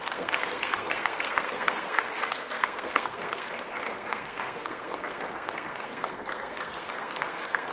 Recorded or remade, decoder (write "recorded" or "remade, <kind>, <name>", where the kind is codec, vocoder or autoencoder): remade, codec, SNAC